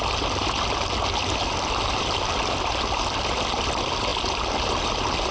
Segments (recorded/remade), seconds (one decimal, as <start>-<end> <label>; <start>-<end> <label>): 0.0-5.3 recorded